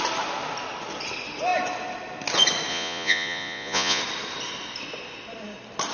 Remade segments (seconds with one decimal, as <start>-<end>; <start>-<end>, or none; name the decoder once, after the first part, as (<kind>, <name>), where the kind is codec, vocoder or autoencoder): 2.7-4.0 (vocoder, Vocos)